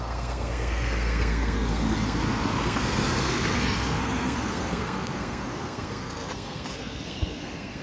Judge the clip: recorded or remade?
remade